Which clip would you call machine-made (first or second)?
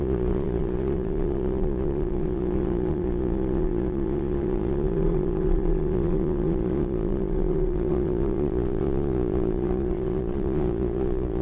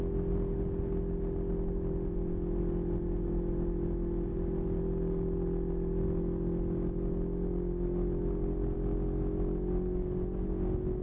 first